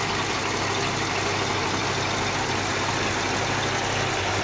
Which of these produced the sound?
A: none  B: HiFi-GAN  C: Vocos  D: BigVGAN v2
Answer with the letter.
A